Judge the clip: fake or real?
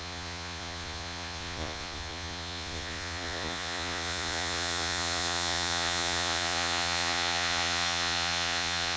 fake